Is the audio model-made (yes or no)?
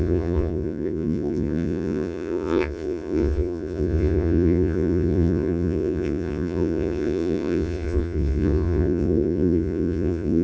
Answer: yes